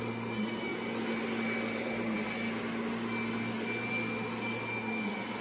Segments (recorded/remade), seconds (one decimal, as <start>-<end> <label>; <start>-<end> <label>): 0.0-5.4 recorded